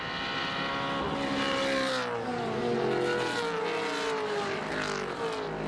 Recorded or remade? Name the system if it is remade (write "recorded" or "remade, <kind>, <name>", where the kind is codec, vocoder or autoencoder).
recorded